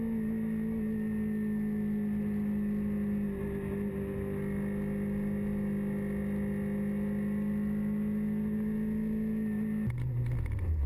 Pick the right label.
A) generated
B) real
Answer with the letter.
B